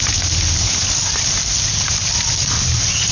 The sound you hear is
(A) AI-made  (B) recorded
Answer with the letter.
B